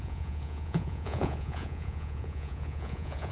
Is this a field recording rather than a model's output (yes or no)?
no